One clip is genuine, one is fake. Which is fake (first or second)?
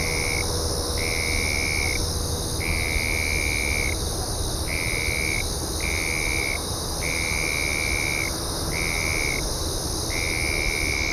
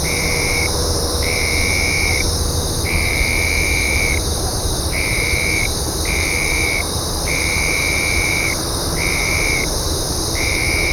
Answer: second